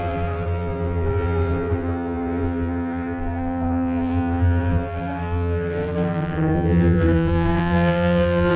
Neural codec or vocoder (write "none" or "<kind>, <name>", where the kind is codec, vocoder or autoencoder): vocoder, BigVGAN v2